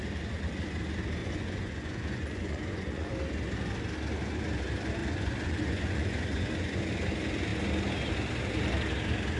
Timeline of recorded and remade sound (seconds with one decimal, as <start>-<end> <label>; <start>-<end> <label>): 0.0-1.2 recorded; 1.2-3.1 remade; 3.1-5.0 recorded; 5.0-6.9 remade; 6.9-9.4 recorded